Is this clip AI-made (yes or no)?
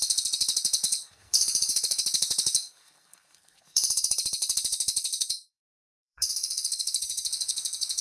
yes